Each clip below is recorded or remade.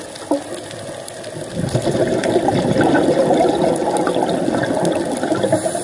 recorded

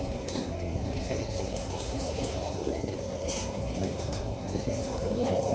remade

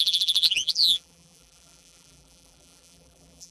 remade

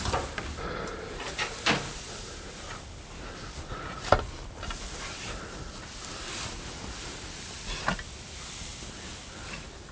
remade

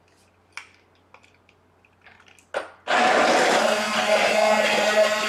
recorded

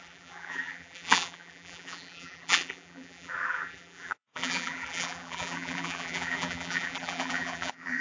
remade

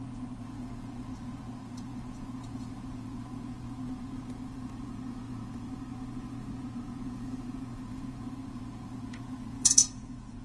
remade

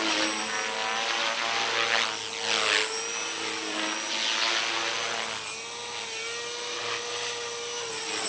recorded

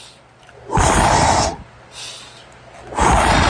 recorded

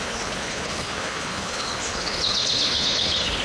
remade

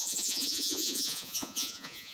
remade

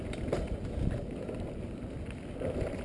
recorded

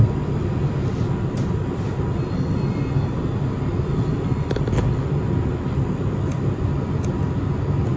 recorded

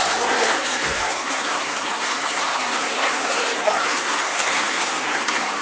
remade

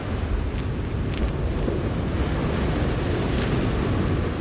recorded